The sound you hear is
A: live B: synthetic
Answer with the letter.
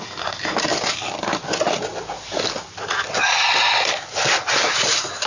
A